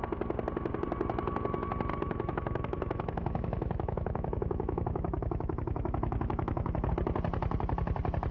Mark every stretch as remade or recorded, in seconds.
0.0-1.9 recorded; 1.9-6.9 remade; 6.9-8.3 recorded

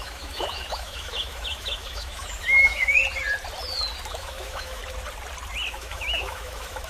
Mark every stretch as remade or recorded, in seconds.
0.0-3.0 remade; 3.0-4.1 recorded; 4.1-4.8 remade; 4.8-5.7 recorded; 5.7-6.9 remade

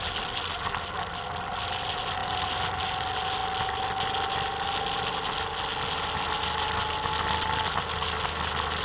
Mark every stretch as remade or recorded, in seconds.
0.0-8.8 recorded